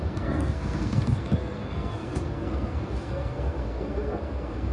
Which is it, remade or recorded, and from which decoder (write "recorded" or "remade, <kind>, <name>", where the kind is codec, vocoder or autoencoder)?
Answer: remade, codec, SNAC